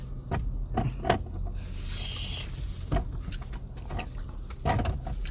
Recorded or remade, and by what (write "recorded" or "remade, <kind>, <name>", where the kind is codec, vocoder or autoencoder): recorded